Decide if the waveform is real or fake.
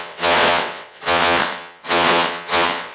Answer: fake